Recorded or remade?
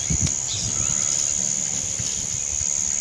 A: recorded